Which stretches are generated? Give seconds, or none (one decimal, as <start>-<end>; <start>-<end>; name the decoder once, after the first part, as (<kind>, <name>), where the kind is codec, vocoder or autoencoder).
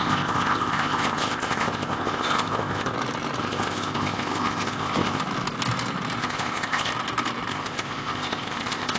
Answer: 0.0-2.9 (codec, ZipCodec); 3.4-5.2; 6.2-6.9; 7.5-9.0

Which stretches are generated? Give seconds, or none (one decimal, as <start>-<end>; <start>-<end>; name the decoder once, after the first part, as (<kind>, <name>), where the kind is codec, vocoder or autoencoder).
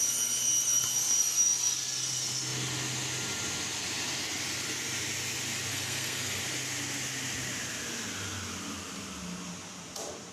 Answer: 5.7-6.4 (codec, SNAC)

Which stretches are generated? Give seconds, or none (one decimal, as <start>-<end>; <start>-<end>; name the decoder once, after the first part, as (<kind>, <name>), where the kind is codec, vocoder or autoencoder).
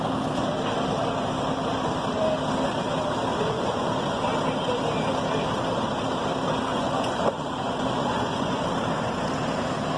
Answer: 3.3-4.2 (vocoder, Vocos); 6.7-8.6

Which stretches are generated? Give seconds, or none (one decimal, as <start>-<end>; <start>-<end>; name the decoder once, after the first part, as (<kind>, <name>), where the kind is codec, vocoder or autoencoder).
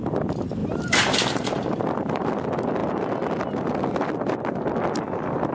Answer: 0.6-2.3 (vocoder, BigVGAN v2)